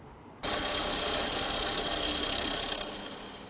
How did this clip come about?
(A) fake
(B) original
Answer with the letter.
B